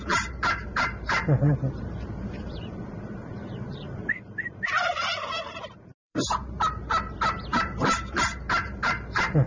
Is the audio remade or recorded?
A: remade